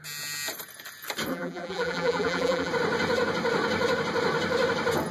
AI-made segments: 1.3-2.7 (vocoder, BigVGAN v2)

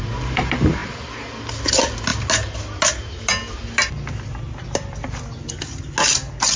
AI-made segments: none

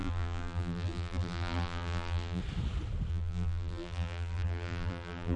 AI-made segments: 0.0-2.4 (vocoder, BigVGAN v2); 3.1-5.4

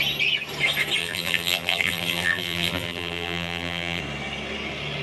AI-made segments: 1.0-4.0 (vocoder, BigVGAN v2)

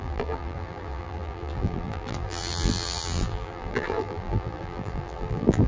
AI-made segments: 0.0-5.7 (vocoder, BigVGAN v2)